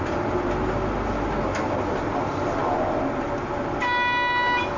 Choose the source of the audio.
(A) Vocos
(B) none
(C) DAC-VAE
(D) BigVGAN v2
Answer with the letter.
B